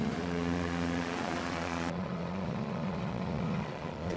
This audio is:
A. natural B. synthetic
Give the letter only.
B